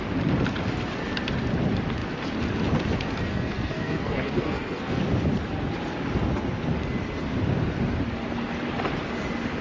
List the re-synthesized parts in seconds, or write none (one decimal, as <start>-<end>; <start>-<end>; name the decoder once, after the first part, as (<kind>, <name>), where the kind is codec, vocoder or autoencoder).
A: 3.3-5.0 (codec, SNAC)